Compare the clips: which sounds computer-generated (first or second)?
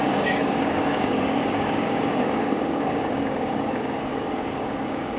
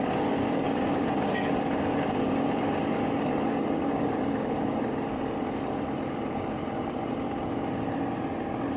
first